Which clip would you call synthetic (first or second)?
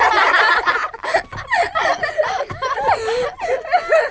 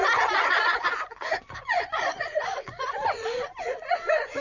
second